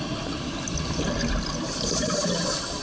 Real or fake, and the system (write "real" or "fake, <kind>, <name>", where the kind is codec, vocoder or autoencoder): real